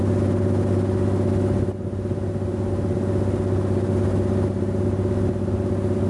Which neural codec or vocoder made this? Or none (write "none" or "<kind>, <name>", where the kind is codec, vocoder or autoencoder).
none